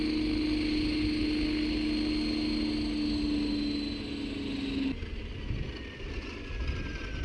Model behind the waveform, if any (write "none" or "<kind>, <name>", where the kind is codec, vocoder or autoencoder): none